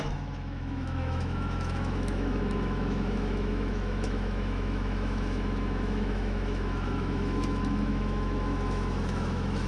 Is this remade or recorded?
remade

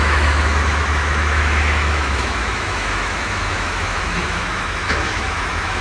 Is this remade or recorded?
remade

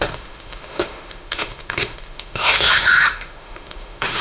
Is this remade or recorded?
remade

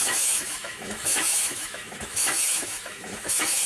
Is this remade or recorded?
remade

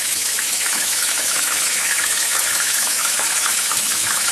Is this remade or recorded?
remade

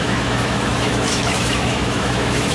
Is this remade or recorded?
remade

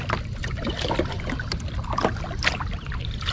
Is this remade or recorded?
recorded